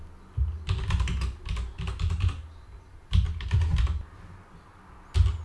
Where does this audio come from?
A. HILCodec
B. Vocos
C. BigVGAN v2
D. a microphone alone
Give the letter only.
D